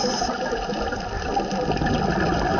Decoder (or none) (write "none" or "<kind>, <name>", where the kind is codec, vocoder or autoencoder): none